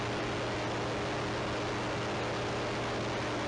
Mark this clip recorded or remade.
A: recorded